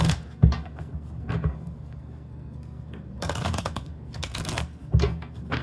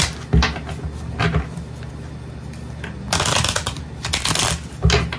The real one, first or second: second